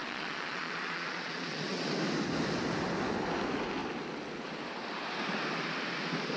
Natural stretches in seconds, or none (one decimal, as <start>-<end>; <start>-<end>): 1.9-6.4

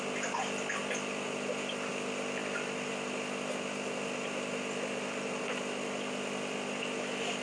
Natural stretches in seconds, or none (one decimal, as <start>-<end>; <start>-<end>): 0.0-7.4

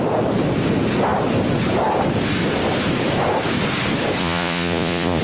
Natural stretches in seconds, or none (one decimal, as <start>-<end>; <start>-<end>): 0.0-4.2

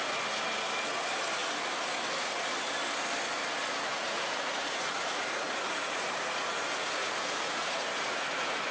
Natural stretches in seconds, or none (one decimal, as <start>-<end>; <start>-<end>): 0.0-3.9; 6.6-7.0

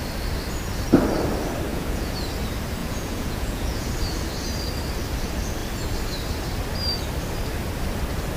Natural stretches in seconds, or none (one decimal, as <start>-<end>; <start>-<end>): 0.0-1.7; 2.2-2.8; 3.9-8.4

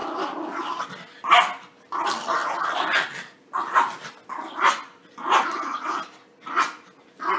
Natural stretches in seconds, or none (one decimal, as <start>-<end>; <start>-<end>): 0.0-7.4